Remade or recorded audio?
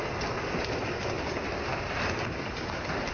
recorded